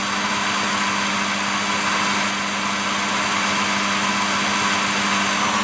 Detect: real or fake real